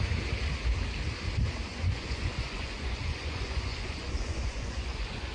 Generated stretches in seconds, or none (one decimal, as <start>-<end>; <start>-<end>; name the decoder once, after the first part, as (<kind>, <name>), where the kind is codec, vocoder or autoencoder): 1.7-5.3 (vocoder, Vocos)

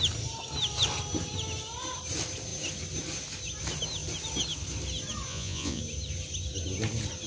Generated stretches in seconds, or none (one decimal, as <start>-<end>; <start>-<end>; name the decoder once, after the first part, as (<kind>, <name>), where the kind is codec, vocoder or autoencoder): 5.3-5.8 (vocoder, Vocos)